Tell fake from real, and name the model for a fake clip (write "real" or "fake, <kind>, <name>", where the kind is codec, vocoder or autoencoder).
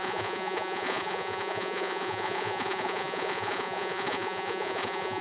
fake, vocoder, Vocos